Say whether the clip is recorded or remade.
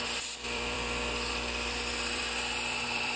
remade